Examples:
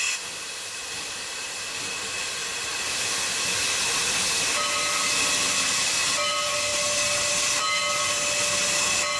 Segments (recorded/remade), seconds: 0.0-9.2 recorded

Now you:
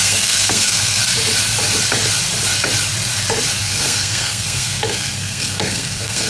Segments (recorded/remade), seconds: 0.0-1.0 remade; 1.0-3.6 recorded; 3.6-6.3 remade

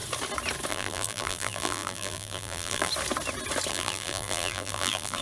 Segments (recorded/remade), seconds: 0.0-0.7 recorded; 0.7-2.9 remade; 2.9-3.7 recorded; 3.7-5.2 remade

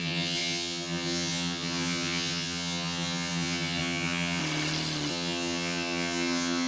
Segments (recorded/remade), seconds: 0.0-4.4 remade; 4.4-5.1 recorded; 5.1-6.7 remade

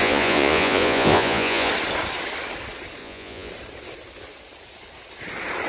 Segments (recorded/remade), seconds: 0.0-1.7 remade; 1.7-3.0 recorded; 3.0-3.5 remade; 3.5-5.7 recorded